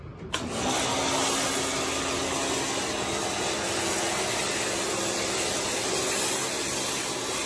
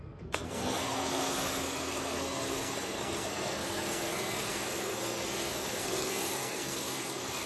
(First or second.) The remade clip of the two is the second